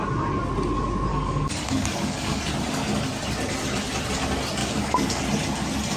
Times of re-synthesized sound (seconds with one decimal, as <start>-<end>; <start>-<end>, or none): 1.1-2.4; 4.6-5.2